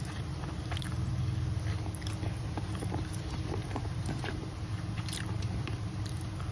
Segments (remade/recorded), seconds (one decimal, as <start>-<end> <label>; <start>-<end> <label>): 0.0-1.1 remade; 1.1-2.4 recorded; 2.4-6.5 remade